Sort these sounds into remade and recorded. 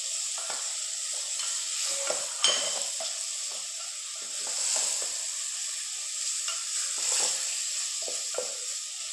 recorded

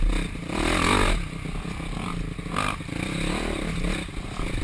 recorded